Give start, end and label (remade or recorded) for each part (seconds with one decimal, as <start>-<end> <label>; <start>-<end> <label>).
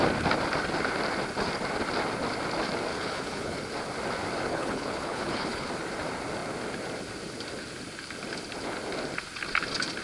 0.0-2.9 recorded; 2.9-3.7 remade; 3.7-4.5 recorded; 4.5-5.7 remade; 5.7-10.0 recorded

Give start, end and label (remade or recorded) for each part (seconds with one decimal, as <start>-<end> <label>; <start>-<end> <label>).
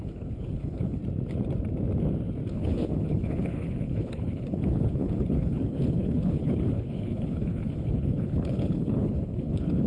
0.0-1.0 remade; 1.0-2.5 recorded; 2.5-9.9 remade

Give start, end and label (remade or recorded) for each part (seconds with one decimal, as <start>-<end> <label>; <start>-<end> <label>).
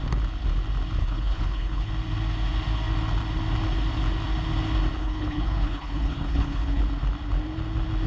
0.0-1.0 recorded; 1.0-1.9 remade; 1.9-5.0 recorded; 5.0-6.8 remade; 6.8-8.1 recorded